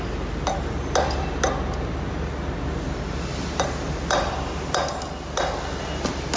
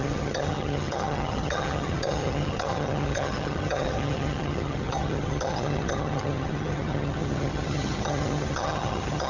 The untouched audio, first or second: first